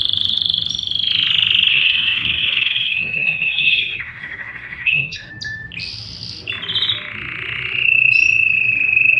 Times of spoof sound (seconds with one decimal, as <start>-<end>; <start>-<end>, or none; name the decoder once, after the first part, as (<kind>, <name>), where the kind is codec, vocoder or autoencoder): 1.7-5.3 (codec, SNAC)